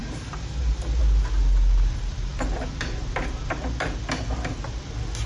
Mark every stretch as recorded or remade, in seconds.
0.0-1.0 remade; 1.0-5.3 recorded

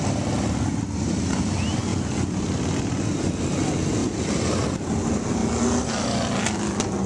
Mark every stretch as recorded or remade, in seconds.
0.0-7.1 recorded

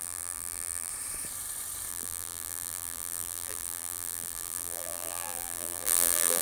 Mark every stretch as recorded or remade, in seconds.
0.0-0.9 remade; 0.9-1.9 recorded; 1.9-6.4 remade